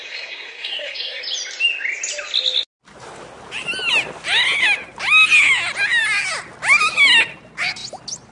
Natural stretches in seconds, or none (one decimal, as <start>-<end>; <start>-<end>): 1.2-8.3